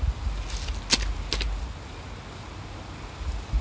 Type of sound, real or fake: real